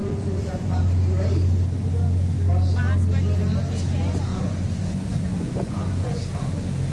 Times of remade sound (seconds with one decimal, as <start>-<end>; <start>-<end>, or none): 0.0-0.8; 4.3-6.2